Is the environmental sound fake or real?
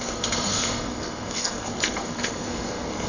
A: fake